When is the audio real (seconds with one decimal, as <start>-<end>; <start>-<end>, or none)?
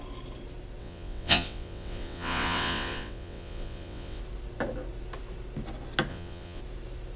0.0-0.8; 4.2-6.1; 6.6-7.2